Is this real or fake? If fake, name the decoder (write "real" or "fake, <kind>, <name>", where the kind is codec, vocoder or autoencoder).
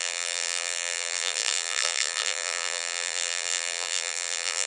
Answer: fake, vocoder, BigVGAN v2